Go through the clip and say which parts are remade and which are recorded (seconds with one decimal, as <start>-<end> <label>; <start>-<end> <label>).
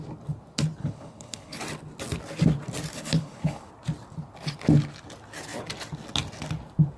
0.0-0.8 recorded; 0.8-1.6 remade; 1.6-2.9 recorded; 2.9-3.7 remade; 3.7-7.0 recorded